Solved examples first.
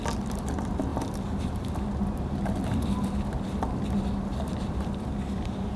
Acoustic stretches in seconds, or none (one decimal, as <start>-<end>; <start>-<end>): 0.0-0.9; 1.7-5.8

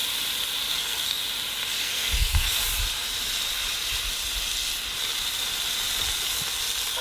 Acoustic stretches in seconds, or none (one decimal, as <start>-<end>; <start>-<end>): 0.0-0.7; 1.2-1.8; 2.6-7.0

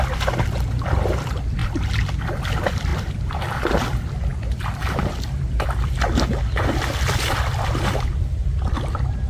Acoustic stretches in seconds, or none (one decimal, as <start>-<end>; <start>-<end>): 0.0-1.6; 2.1-2.9; 3.7-4.3; 7.8-9.3